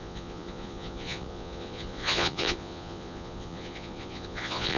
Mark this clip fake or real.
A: fake